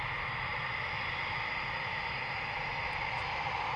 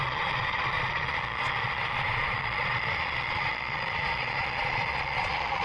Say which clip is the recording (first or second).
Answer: first